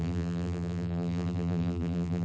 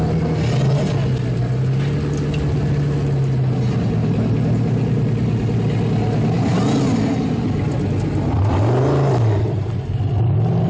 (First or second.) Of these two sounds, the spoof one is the first